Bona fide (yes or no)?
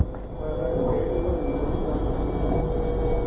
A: yes